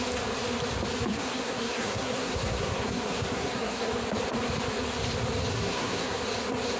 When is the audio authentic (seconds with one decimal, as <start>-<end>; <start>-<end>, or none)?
0.0-1.1; 3.9-5.5; 6.2-6.8